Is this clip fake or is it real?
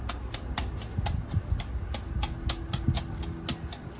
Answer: real